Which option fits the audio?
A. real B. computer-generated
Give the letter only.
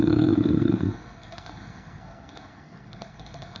B